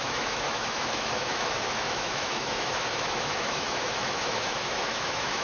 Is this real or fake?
fake